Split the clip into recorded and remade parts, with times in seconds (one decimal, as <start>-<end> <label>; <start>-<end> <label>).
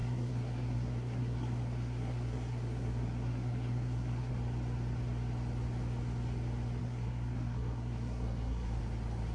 0.0-4.3 remade; 4.3-6.8 recorded; 6.8-8.8 remade; 8.8-9.3 recorded